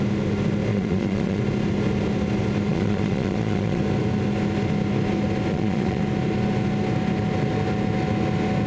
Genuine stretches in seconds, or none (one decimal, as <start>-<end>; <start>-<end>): 0.0-0.7; 1.4-2.7; 3.8-5.5; 6.0-8.7